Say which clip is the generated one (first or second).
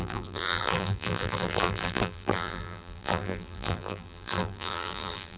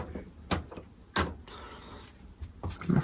first